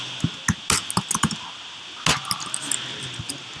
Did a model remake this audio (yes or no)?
no